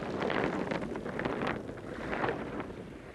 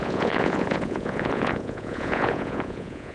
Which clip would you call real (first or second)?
first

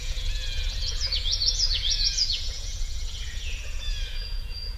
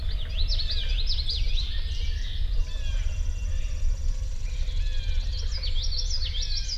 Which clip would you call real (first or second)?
second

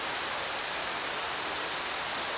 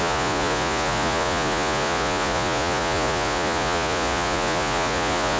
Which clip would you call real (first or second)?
first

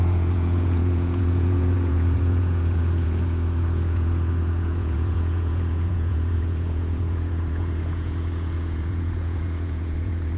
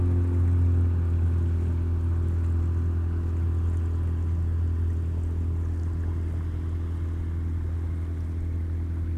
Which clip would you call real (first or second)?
second